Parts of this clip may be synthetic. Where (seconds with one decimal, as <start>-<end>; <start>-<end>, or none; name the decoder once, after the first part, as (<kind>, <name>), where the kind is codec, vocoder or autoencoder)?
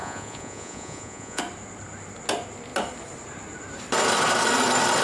0.0-1.4 (vocoder, Vocos)